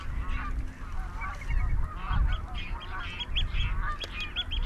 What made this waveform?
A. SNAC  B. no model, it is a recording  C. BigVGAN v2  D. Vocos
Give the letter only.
B